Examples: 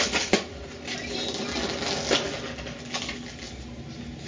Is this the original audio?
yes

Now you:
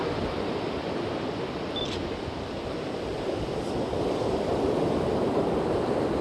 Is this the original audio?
yes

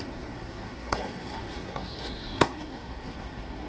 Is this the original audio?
no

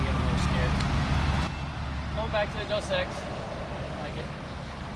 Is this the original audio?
yes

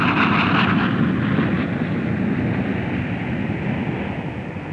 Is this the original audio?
yes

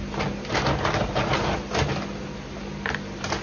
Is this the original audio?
yes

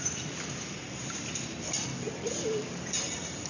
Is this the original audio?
yes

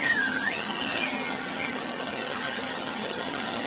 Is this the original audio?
no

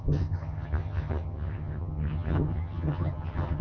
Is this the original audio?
no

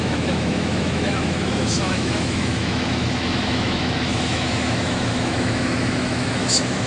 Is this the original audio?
no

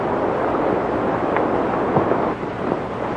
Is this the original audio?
yes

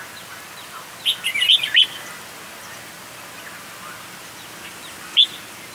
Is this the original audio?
yes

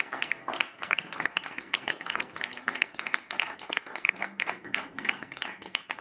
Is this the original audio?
no